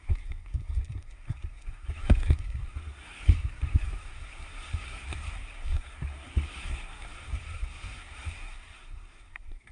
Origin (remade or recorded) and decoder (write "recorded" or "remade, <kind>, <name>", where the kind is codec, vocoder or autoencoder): remade, codec, SNAC